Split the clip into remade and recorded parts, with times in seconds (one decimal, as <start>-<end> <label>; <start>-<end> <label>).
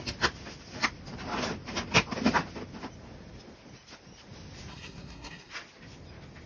0.0-4.7 recorded; 4.7-5.5 remade; 5.5-6.5 recorded